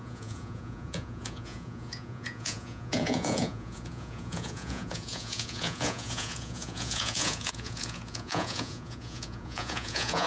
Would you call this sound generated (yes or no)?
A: yes